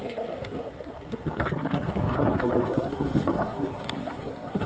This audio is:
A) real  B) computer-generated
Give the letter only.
B